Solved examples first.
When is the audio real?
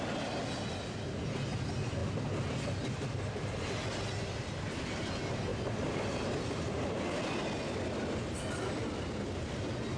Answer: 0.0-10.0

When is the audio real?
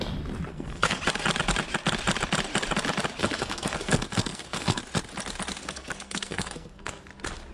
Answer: 0.0-0.5; 1.0-3.2; 4.8-5.6; 7.0-7.5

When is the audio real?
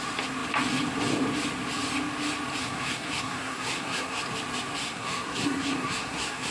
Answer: 0.0-2.6; 4.2-4.8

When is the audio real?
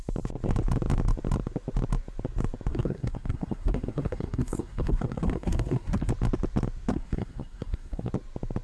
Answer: 0.0-2.7; 6.1-6.9; 8.1-8.6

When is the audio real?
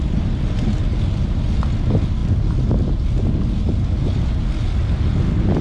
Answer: 0.0-5.6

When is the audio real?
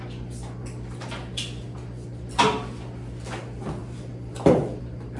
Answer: 0.0-5.2